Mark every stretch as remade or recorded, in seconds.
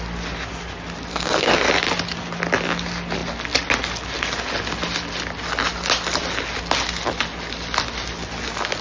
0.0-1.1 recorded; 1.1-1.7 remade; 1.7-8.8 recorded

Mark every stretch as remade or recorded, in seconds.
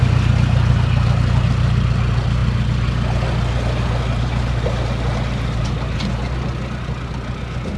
0.0-7.8 recorded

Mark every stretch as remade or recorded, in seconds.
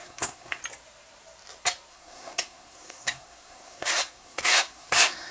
0.0-0.6 remade; 0.6-1.9 recorded; 1.9-5.3 remade